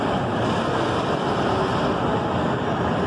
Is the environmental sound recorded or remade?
recorded